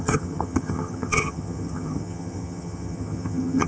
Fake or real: fake